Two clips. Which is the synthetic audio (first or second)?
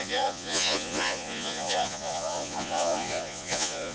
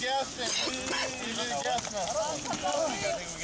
first